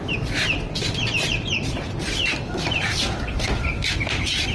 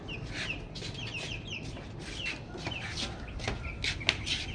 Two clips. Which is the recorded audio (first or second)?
second